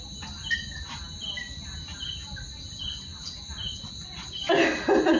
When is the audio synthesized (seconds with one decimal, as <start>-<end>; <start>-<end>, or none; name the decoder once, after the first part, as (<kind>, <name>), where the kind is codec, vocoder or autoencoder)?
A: none